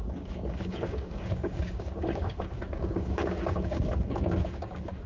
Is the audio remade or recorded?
remade